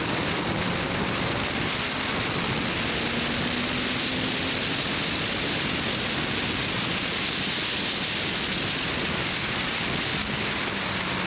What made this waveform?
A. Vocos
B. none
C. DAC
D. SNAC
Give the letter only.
B